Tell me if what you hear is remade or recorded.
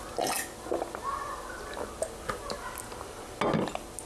recorded